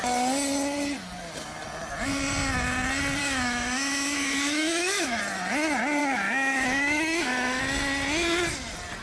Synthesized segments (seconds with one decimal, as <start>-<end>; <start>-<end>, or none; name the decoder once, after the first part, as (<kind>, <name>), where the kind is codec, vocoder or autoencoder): 3.2-5.2 (autoencoder, DAC-VAE); 6.0-7.6